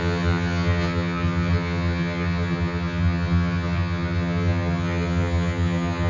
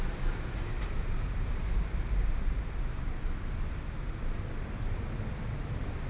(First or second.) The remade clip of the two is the first